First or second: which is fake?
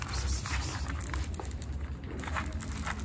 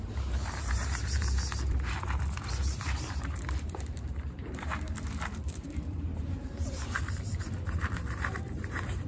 second